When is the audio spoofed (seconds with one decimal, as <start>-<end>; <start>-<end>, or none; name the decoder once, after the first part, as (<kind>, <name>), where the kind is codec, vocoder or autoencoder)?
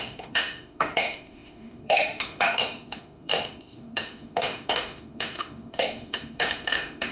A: 0.0-7.1 (autoencoder, DAC-VAE)